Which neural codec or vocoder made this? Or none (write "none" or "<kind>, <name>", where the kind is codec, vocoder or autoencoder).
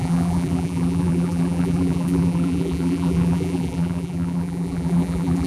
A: vocoder, BigVGAN v2